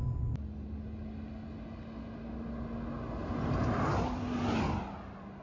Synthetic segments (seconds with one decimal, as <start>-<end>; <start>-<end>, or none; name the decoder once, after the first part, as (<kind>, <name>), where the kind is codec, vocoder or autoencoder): none